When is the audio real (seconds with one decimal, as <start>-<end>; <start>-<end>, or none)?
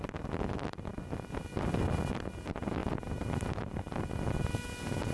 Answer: 0.0-2.8; 4.3-5.1